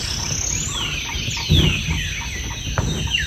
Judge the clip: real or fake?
real